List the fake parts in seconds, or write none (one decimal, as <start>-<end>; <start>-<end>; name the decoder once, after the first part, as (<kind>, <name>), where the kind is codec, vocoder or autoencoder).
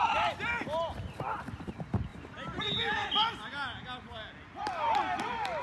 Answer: none